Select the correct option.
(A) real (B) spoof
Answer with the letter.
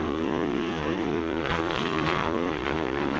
B